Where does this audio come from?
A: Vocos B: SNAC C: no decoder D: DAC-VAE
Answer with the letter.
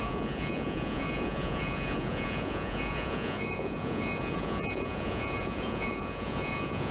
A